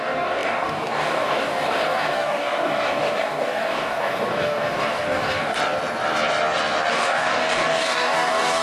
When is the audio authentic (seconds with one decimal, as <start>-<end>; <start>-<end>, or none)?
5.6-6.9